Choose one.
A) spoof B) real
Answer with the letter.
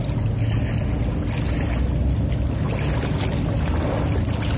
B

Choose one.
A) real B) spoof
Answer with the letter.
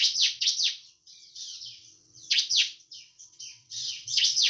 B